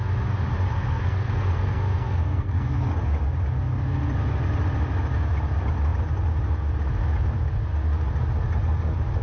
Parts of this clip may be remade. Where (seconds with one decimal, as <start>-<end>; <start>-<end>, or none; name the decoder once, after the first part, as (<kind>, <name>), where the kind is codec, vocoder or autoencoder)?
0.7-2.9 (codec, SNAC)